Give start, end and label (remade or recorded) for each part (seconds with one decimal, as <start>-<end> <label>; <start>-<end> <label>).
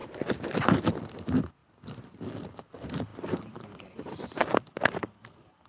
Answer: 0.0-1.1 remade; 1.1-3.1 recorded; 3.1-5.2 remade; 5.2-5.7 recorded